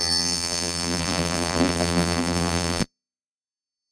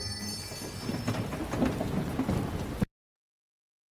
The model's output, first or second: first